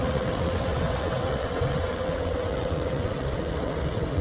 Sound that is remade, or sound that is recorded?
remade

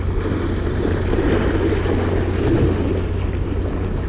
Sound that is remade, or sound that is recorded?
recorded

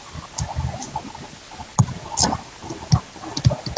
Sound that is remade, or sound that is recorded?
recorded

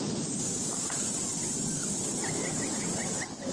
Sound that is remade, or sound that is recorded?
remade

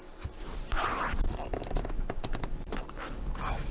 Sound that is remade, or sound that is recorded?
recorded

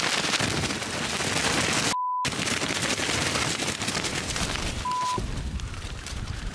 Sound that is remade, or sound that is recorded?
recorded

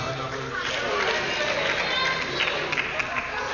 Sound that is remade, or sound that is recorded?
recorded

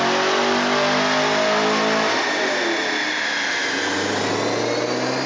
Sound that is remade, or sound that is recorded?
recorded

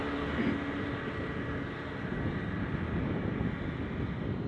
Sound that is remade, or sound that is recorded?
recorded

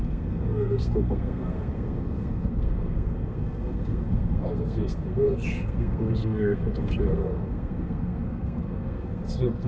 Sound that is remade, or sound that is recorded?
remade